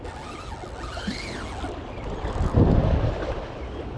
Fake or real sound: real